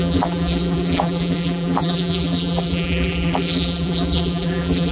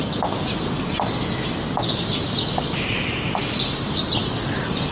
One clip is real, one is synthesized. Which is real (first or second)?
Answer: second